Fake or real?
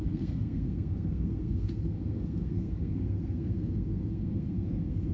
fake